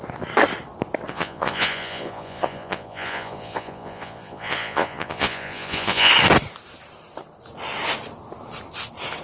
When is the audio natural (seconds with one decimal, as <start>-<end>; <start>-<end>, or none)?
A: 0.0-1.1; 6.1-9.2